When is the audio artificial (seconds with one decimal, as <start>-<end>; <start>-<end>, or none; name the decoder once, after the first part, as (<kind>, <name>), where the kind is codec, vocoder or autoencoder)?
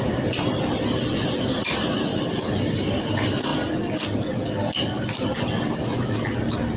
2.1-3.0 (vocoder, BigVGAN v2)